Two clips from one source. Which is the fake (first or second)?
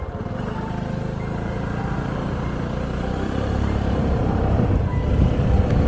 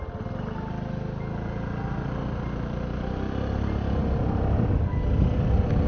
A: first